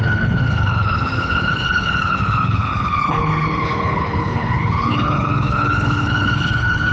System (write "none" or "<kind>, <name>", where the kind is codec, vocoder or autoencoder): codec, HILCodec